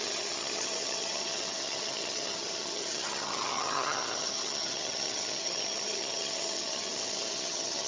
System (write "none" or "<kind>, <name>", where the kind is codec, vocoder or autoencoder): vocoder, HiFi-GAN